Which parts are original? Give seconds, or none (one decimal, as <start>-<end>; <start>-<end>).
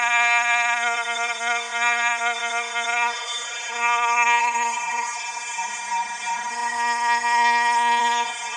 none